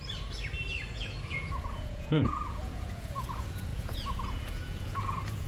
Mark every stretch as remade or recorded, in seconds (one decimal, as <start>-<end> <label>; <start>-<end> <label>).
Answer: 0.0-0.9 recorded; 0.9-5.5 remade

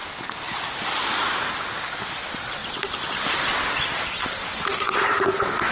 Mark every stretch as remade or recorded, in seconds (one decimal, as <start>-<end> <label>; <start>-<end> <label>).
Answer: 0.0-5.7 recorded